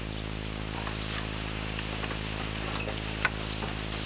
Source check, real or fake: real